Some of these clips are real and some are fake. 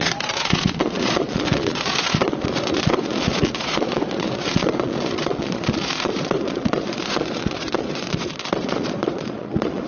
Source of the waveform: fake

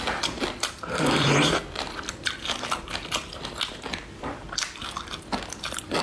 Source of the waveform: fake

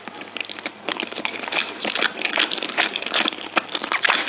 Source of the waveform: real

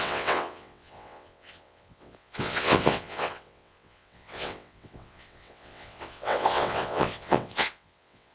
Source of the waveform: fake